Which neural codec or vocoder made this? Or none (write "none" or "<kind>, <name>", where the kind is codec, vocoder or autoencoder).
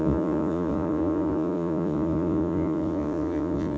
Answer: vocoder, Vocos